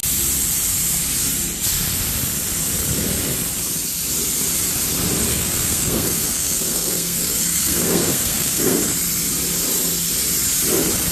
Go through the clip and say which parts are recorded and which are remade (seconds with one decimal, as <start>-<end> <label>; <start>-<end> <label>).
0.0-5.3 recorded; 5.3-8.8 remade; 8.8-11.1 recorded